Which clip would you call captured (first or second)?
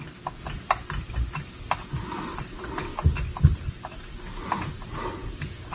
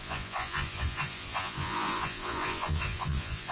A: first